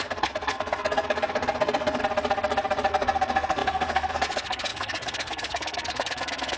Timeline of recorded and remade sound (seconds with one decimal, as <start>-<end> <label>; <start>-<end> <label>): 0.0-2.0 remade; 2.0-2.9 recorded; 2.9-6.6 remade